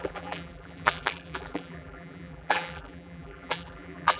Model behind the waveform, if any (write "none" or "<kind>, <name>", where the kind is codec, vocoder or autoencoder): vocoder, BigVGAN v2